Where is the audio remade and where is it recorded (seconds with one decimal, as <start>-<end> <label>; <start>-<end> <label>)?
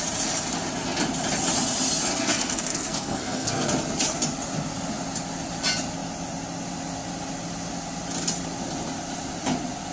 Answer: 0.0-2.1 recorded; 2.1-3.7 remade; 3.7-9.9 recorded